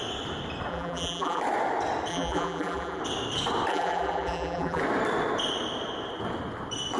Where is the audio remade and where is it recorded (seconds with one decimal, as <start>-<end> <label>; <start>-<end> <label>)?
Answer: 0.0-0.7 recorded; 0.7-1.4 remade; 1.4-2.1 recorded; 2.1-3.0 remade; 3.0-3.7 recorded; 3.7-4.8 remade; 4.8-7.0 recorded